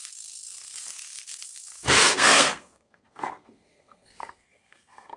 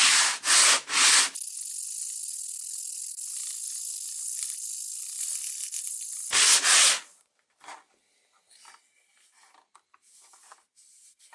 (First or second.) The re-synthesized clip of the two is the first